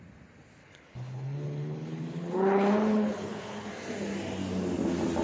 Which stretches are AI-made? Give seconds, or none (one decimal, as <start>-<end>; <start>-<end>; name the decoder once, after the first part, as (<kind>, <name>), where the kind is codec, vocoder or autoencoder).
0.6-3.7 (codec, HILCodec)